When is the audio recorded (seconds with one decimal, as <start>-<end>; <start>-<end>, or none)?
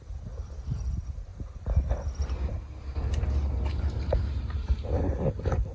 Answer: 0.0-5.7